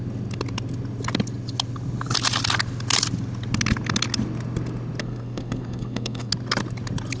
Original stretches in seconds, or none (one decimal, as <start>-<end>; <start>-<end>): 0.0-5.0; 6.3-7.2